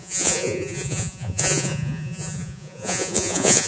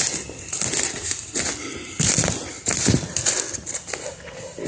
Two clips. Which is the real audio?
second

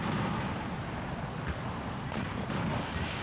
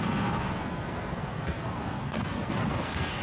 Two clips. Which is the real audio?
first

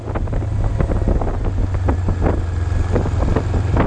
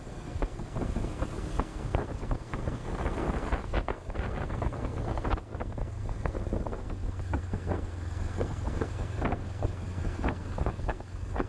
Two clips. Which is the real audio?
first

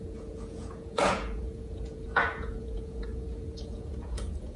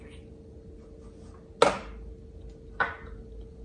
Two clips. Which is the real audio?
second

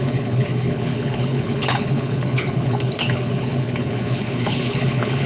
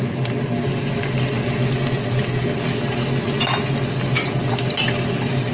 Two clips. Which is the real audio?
second